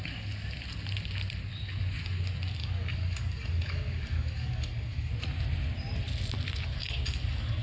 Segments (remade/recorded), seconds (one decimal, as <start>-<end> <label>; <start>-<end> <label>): 0.0-2.6 recorded; 2.6-5.1 remade; 5.1-7.6 recorded